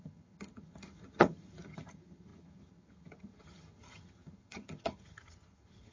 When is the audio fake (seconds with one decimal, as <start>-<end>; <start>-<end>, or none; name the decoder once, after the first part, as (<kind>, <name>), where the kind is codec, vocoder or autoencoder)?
0.0-5.9 (vocoder, HiFi-GAN)